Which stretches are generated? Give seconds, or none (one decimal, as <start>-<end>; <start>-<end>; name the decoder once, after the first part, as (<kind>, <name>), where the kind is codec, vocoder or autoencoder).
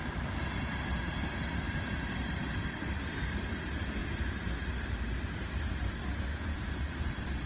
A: 6.3-6.9 (vocoder, Vocos)